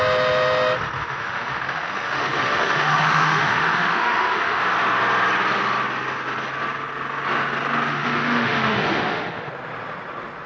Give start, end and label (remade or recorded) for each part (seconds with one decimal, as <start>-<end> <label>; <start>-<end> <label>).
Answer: 0.0-1.0 recorded; 1.0-4.6 remade; 4.6-7.9 recorded; 7.9-9.5 remade; 9.5-10.5 recorded